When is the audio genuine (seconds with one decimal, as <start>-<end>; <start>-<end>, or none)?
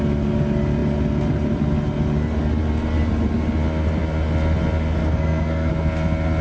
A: 0.0-5.0; 5.7-6.4